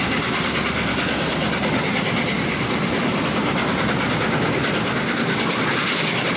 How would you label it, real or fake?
real